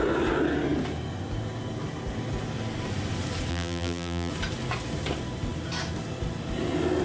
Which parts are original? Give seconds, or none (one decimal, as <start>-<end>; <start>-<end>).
0.0-3.5; 4.3-7.0